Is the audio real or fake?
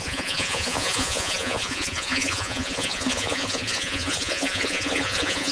fake